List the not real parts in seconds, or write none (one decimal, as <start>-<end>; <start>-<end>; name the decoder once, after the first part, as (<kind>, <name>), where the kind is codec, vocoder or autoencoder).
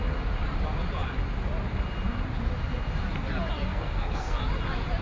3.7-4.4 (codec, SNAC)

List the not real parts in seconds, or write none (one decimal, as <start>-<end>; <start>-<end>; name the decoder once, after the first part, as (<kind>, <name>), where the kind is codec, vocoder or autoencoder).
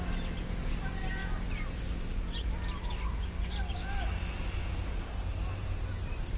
none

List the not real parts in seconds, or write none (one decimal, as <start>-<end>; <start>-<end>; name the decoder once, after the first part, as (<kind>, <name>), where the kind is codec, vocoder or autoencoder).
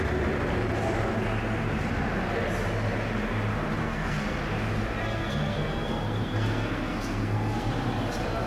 3.8-4.4 (codec, SNAC); 5.0-7.7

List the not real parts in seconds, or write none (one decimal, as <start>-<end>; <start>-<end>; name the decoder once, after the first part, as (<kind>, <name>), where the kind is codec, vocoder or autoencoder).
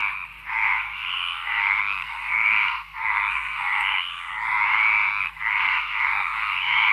0.5-4.3 (codec, SNAC); 5.2-6.9